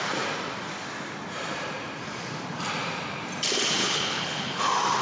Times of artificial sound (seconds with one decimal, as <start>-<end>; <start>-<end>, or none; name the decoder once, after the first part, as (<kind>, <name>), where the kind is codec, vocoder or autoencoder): 3.8-4.6 (codec, HILCodec)

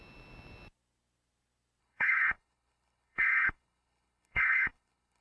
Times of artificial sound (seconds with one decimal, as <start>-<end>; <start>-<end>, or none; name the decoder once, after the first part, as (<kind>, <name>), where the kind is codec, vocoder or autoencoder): 1.8-5.2 (codec, HILCodec)

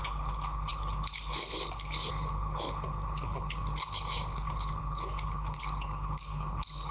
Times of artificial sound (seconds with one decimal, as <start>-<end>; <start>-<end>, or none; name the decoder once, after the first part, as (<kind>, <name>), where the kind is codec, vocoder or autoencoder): 0.0-6.9 (codec, HILCodec)

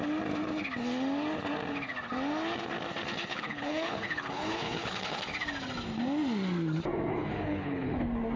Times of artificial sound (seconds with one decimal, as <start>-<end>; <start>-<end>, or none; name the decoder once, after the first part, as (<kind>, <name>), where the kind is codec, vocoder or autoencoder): 3.3-5.2 (codec, HILCodec); 7.1-8.0

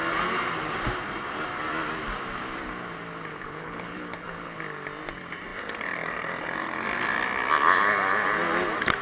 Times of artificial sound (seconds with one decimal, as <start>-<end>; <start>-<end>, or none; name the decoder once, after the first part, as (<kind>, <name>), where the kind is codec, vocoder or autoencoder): 3.3-4.6 (codec, HILCodec)

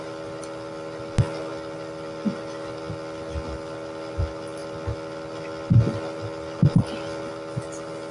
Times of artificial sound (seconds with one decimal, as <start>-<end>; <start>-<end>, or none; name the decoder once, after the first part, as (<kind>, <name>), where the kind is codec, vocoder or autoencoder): none

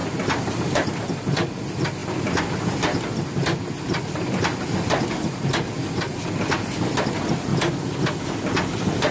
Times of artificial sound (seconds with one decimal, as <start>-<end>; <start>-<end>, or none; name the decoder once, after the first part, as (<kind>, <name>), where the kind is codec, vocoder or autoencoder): none